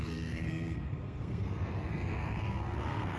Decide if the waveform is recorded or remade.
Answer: remade